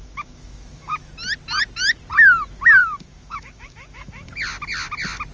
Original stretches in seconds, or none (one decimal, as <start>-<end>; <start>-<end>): 1.1-2.8; 4.3-5.3